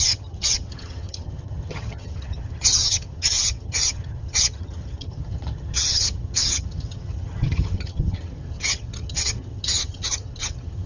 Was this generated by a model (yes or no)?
yes